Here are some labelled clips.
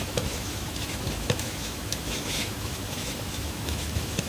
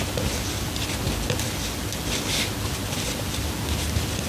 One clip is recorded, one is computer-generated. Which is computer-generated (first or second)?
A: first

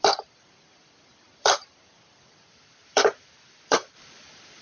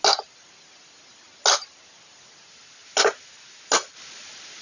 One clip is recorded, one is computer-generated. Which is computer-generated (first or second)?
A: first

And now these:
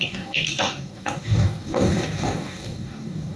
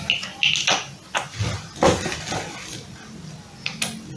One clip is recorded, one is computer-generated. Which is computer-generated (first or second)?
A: first